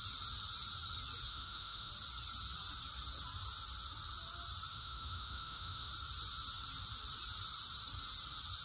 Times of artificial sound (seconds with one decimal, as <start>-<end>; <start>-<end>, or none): 1.3-1.9; 4.7-5.9